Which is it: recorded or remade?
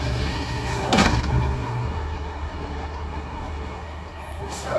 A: remade